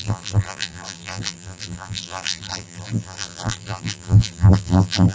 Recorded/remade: remade